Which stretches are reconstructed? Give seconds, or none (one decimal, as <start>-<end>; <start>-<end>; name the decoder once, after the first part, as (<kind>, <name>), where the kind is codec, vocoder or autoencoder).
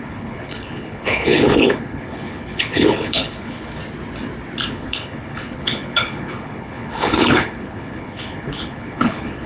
0.0-3.8 (codec, HILCodec); 4.7-9.5